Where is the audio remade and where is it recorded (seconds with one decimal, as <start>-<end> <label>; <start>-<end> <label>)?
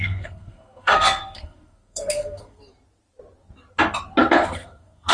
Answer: 0.0-2.6 remade; 2.6-4.5 recorded; 4.5-5.1 remade